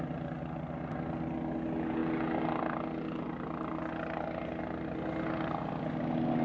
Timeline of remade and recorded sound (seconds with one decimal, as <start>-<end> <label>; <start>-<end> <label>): 0.0-6.4 recorded